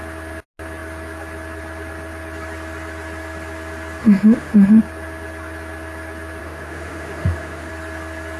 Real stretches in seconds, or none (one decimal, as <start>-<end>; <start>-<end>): 0.0-4.0; 4.8-6.4; 7.7-8.4